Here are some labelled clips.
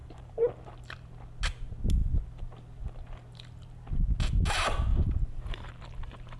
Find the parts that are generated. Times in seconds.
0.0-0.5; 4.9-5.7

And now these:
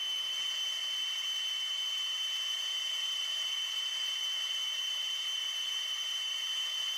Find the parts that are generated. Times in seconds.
0.0-0.8; 2.5-7.0

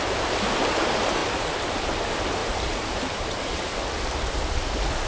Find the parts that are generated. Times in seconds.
1.2-1.9; 2.4-3.6